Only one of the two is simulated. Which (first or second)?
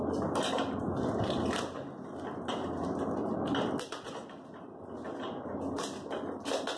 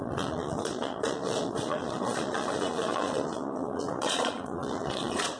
second